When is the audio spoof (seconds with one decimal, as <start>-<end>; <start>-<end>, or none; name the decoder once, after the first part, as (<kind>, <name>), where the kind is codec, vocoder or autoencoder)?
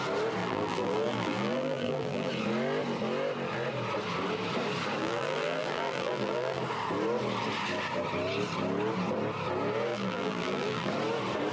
0.4-2.3 (vocoder, BigVGAN v2); 5.0-6.6; 9.9-10.9